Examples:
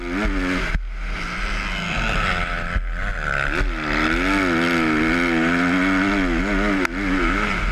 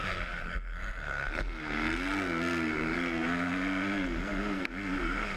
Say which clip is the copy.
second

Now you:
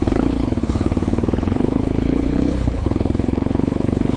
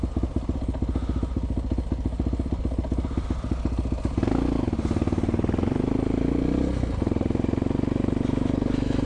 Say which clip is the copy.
first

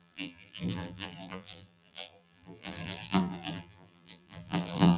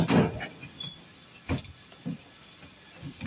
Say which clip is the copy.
first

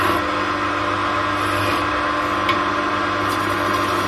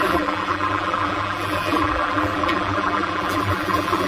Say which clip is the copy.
second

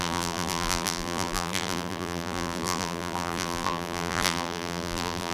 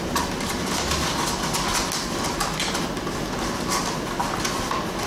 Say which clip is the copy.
first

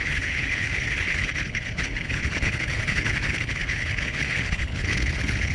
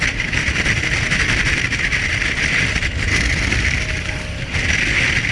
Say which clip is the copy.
first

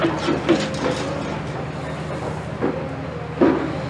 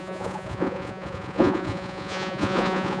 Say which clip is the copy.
second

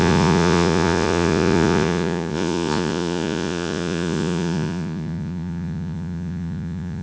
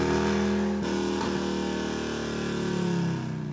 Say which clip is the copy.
first